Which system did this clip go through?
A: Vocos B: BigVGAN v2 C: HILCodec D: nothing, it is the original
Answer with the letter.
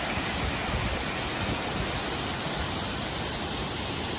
D